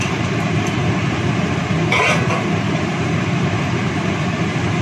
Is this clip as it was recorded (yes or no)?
no